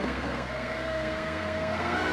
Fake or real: fake